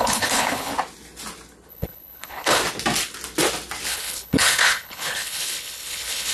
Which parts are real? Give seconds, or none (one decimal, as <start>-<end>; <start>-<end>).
0.7-1.7; 2.6-3.9